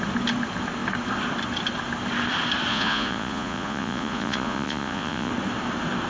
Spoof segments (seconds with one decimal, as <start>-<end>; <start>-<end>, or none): 2.7-5.3